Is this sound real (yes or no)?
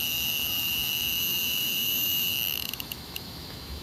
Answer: no